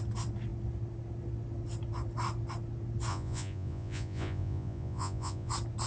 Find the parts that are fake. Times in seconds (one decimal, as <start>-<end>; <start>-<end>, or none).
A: 3.1-5.5